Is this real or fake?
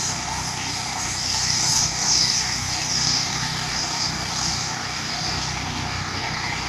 fake